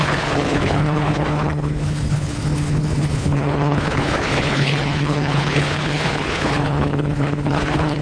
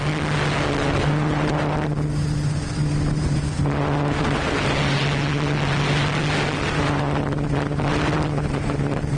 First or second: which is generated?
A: first